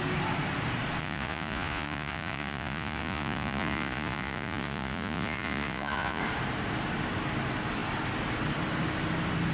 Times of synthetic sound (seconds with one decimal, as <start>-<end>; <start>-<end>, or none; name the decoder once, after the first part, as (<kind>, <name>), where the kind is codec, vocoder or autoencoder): 1.0-6.2 (vocoder, Vocos)